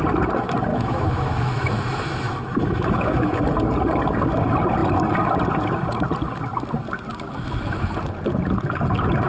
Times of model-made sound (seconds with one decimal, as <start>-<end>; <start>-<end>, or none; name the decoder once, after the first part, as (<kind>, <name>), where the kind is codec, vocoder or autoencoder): 0.7-3.4 (autoencoder, DAC-VAE)